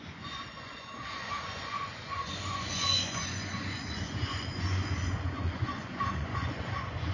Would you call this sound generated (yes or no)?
yes